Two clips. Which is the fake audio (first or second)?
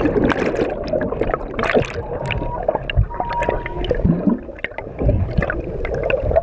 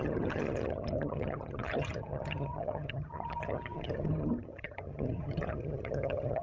second